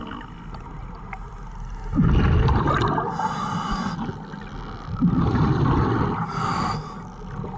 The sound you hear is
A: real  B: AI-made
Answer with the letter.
A